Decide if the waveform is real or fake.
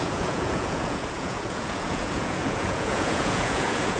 fake